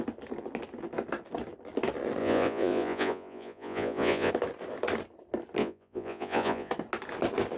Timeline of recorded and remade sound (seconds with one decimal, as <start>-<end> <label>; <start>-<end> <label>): 0.0-2.2 recorded; 2.2-4.3 remade; 4.3-5.6 recorded; 5.6-6.7 remade; 6.7-7.6 recorded